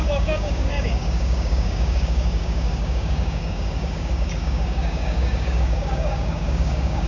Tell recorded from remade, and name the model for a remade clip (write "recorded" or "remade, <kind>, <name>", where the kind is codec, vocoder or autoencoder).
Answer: remade, codec, DAC